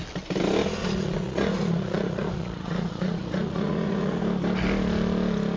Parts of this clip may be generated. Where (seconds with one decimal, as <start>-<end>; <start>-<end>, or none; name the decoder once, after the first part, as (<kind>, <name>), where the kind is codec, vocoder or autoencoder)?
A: 0.8-4.2 (vocoder, Vocos)